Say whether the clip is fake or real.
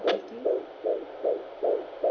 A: real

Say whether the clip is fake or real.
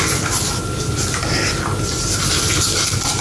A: real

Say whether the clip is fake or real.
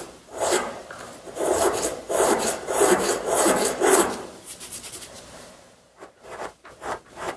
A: fake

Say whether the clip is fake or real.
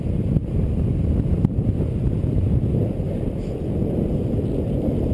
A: fake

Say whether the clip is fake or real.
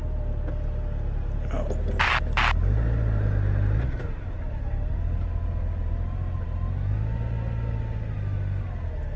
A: real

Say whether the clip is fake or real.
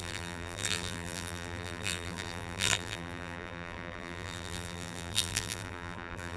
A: fake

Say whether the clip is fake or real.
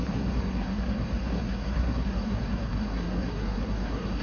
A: fake